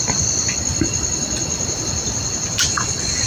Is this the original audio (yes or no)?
yes